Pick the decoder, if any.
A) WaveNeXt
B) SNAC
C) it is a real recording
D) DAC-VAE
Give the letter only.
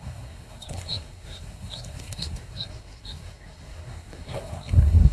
B